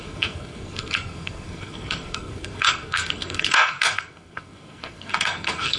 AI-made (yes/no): yes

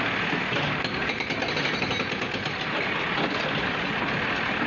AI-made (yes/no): no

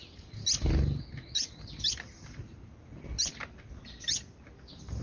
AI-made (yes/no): no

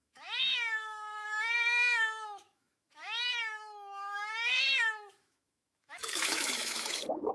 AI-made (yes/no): yes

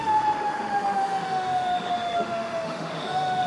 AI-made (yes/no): yes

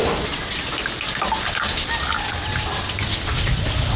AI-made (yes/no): no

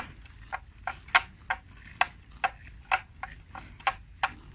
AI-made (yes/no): no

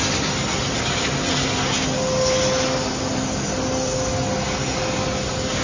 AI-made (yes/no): no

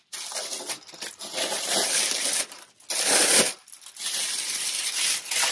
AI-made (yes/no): no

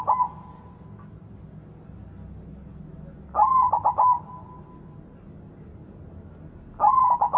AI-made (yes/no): no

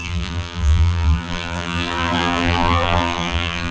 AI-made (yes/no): yes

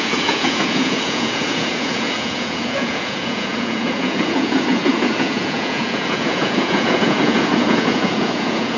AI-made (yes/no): yes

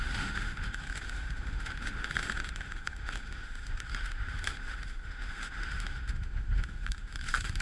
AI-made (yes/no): yes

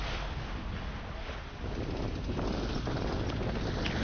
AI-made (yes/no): no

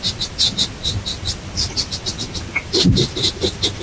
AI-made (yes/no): no